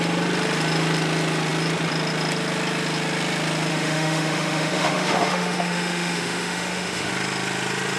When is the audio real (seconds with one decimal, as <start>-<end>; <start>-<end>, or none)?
0.0-3.7; 7.1-8.0